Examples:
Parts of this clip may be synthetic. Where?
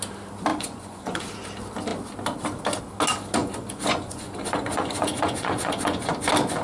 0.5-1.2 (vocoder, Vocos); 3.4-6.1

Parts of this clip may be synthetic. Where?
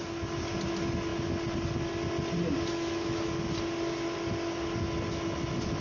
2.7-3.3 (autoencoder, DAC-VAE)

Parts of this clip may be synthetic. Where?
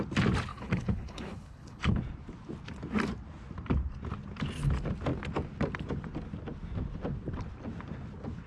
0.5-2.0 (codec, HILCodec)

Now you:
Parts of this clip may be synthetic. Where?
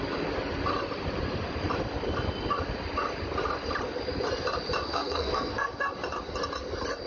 4.9-5.7 (codec, SNAC)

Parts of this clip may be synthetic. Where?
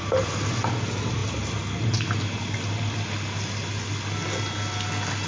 none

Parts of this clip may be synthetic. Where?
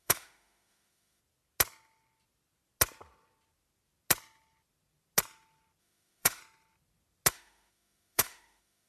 0.0-1.2 (autoencoder, DAC-VAE); 5.8-6.4; 7.3-8.9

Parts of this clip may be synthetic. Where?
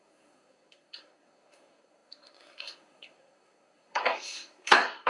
0.0-5.1 (codec, SNAC)